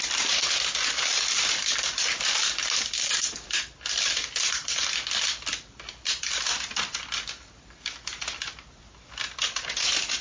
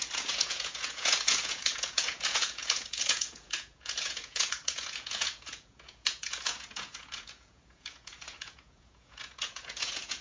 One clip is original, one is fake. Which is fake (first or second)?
second